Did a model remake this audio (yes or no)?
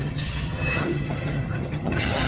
yes